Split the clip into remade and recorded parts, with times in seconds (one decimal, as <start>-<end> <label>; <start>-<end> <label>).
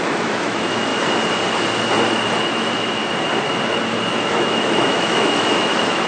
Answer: 0.0-0.9 remade; 0.9-2.4 recorded; 2.4-3.0 remade; 3.0-4.2 recorded; 4.2-6.1 remade